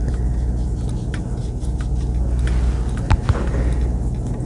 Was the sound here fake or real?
real